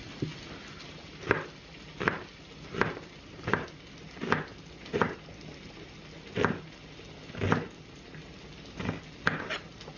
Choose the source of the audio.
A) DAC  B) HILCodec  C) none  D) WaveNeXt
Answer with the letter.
C